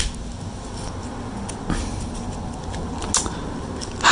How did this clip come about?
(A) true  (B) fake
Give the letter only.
A